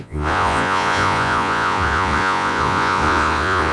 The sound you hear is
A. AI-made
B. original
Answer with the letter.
A